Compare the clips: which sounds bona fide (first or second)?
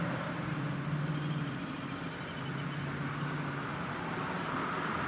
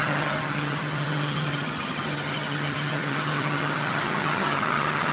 first